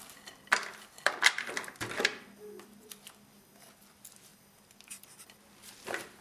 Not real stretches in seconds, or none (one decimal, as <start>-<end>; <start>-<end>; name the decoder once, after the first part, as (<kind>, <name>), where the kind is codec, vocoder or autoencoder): none